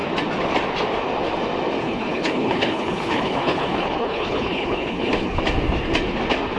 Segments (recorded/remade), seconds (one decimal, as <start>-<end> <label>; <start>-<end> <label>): 0.0-1.8 recorded; 1.8-5.4 remade; 5.4-6.6 recorded